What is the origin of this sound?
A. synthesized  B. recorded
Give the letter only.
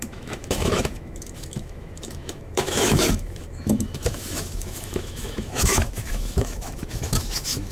A